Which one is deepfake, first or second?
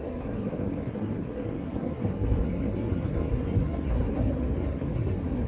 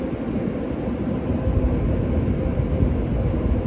first